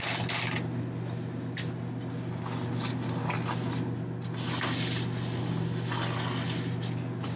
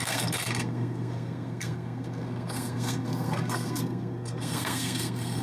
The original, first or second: first